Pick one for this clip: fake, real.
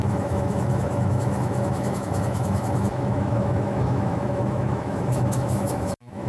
fake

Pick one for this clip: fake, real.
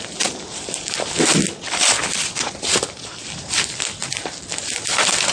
real